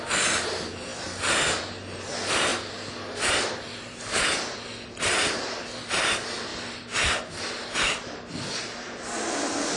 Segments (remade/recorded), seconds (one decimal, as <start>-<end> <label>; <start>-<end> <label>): 0.0-9.8 recorded